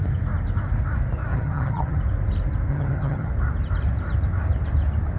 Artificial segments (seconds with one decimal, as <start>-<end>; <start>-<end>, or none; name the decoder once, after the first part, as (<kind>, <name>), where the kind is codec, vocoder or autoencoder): 1.3-2.0 (vocoder, HiFi-GAN); 2.7-3.3